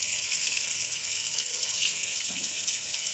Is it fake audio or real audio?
fake